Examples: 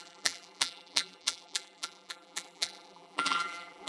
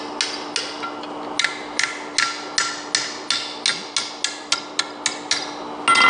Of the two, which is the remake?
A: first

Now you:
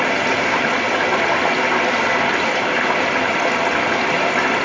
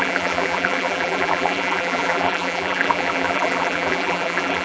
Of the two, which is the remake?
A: second